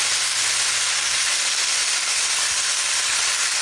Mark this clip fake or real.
real